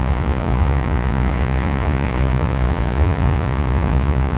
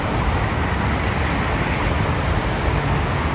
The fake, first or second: first